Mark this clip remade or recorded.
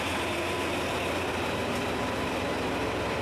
remade